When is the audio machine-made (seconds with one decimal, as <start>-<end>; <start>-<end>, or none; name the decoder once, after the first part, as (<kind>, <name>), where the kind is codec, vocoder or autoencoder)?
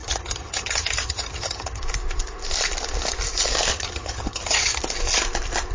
0.0-1.8 (vocoder, HiFi-GAN); 3.7-4.8